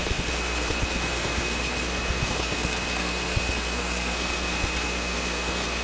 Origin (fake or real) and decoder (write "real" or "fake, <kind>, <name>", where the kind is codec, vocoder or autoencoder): fake, codec, SNAC